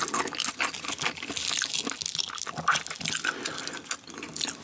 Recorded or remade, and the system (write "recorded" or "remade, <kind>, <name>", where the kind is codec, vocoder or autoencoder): recorded